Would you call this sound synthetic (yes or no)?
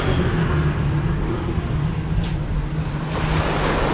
no